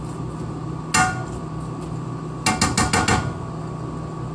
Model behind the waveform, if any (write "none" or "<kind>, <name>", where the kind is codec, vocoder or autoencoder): none